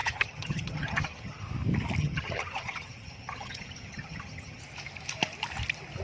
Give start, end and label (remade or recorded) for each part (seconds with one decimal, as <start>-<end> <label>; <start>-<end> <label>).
0.0-1.4 remade; 1.4-2.0 recorded; 2.0-4.6 remade; 4.6-6.0 recorded